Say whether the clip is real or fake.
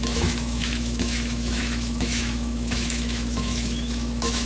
fake